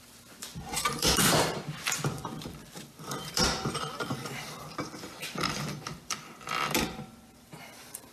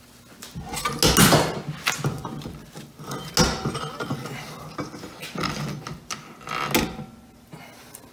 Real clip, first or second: second